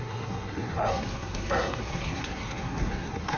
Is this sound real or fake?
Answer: fake